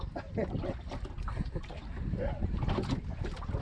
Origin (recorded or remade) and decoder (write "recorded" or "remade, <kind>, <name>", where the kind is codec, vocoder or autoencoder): recorded